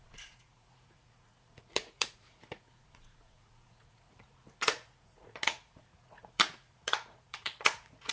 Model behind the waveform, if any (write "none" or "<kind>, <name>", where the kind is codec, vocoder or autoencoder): vocoder, Vocos